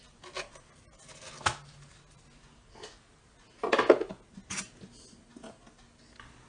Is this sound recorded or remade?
recorded